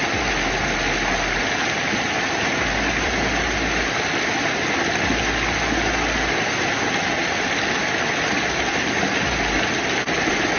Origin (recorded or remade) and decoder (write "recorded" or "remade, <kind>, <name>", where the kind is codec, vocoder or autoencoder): recorded